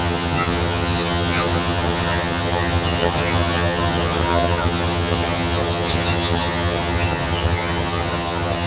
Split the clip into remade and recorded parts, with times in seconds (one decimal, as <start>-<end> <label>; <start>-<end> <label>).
0.0-8.7 remade